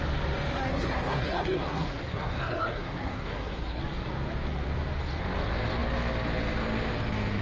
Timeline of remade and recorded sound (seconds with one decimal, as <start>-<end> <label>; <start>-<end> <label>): 0.0-0.7 recorded; 0.7-3.8 remade; 3.8-7.4 recorded